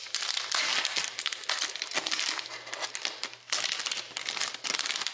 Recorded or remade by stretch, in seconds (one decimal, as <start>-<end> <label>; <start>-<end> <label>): 0.0-5.1 recorded

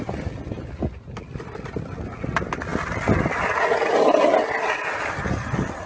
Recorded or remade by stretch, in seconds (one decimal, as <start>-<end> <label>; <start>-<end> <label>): 0.0-5.9 recorded

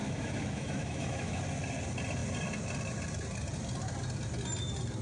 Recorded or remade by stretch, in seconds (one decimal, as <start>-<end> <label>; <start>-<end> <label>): 0.0-1.4 remade; 1.4-5.0 recorded